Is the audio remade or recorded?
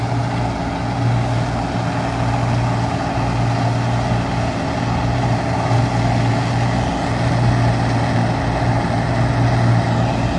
recorded